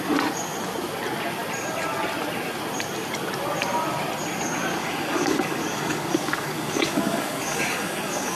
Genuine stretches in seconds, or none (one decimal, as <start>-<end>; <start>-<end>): 0.0-4.8

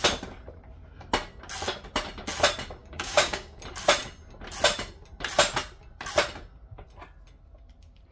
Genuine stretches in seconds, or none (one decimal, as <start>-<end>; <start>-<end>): 0.0-2.8; 3.6-8.1